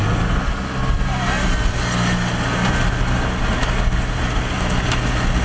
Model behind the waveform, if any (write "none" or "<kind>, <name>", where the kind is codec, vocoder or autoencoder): none